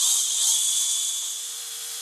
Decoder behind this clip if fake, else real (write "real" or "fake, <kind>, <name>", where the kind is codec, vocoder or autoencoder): real